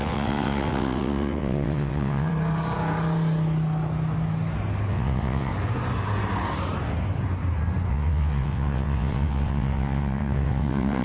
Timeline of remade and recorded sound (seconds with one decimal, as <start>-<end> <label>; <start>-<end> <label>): 0.0-2.3 remade; 2.3-4.9 recorded; 4.9-5.5 remade; 5.5-7.9 recorded; 7.9-11.0 remade